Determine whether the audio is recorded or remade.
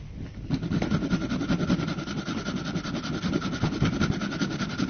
recorded